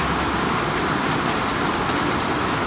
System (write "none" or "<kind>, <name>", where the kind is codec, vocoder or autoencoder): none